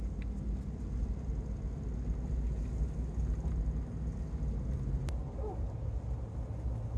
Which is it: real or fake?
real